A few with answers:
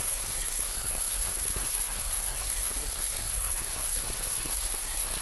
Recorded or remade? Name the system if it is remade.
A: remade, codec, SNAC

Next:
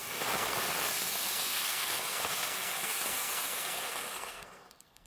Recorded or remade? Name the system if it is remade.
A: remade, codec, SNAC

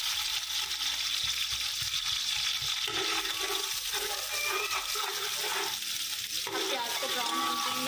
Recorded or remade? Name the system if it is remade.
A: recorded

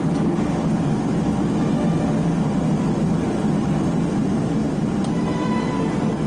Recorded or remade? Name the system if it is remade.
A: recorded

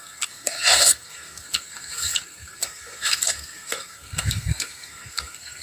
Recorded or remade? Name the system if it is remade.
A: remade, codec, SNAC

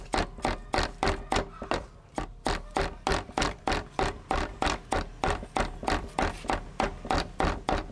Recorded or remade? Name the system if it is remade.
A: recorded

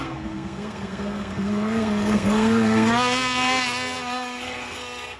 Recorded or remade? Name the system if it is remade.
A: remade, codec, SNAC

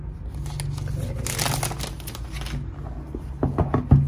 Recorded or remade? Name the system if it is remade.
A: recorded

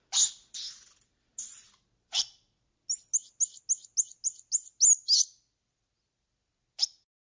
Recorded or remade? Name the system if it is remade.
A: recorded